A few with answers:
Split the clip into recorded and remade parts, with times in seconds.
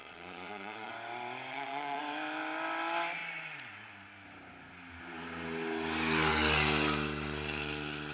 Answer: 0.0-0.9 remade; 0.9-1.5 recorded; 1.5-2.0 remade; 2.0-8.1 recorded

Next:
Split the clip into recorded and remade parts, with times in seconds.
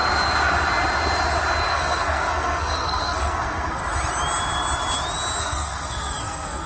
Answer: 0.0-1.7 recorded; 1.7-3.8 remade; 3.8-5.4 recorded; 5.4-6.7 remade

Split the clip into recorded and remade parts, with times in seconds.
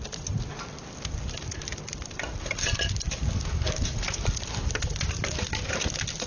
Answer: 0.0-6.3 recorded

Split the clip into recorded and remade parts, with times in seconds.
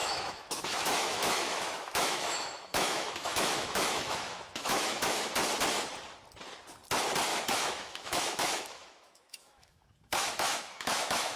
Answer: 0.0-5.3 remade; 5.3-7.3 recorded; 7.3-11.4 remade